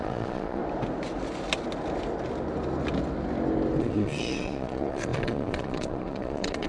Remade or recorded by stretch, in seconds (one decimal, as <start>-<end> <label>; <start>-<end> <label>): 0.0-0.6 remade; 0.6-3.8 recorded; 3.8-6.7 remade